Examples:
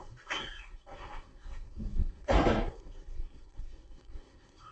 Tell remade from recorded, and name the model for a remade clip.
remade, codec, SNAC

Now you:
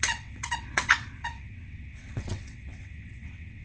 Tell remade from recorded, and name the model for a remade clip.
remade, vocoder, WaveNeXt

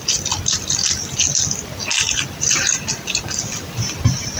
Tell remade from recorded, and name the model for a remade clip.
remade, vocoder, BigVGAN v2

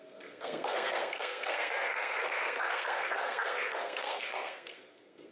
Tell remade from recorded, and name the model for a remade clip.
remade, codec, SNAC